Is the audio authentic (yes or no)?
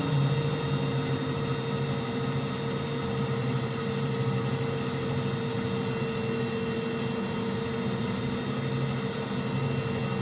yes